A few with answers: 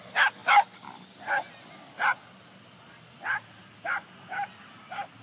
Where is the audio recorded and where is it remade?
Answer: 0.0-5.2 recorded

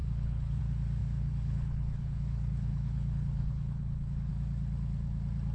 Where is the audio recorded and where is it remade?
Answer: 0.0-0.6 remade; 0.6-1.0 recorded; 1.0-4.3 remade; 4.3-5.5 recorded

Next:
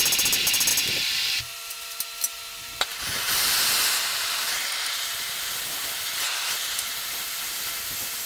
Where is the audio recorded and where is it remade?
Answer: 0.0-0.7 recorded; 0.7-1.4 remade; 1.4-8.3 recorded

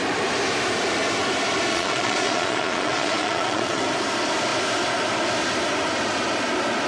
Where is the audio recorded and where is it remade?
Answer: 0.0-1.7 recorded; 1.7-3.8 remade; 3.8-6.9 recorded